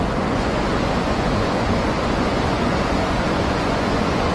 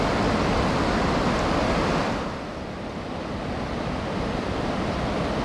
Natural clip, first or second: second